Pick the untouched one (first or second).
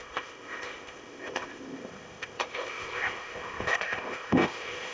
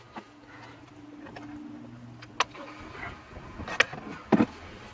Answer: second